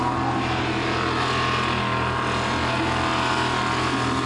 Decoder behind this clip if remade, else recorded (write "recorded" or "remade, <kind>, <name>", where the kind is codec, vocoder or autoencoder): recorded